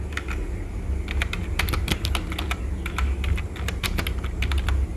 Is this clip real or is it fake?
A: real